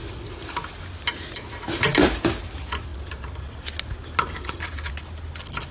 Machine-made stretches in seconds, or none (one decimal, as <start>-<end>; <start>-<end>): none